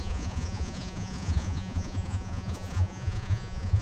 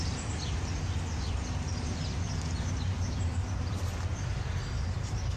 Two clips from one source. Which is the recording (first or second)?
second